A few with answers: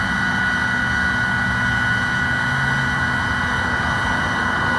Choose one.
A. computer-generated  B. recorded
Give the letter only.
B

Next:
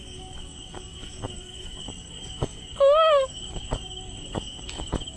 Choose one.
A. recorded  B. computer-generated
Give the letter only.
B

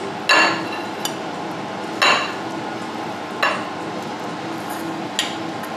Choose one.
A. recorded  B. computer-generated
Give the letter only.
A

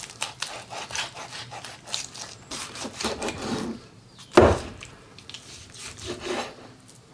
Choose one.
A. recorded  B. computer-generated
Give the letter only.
A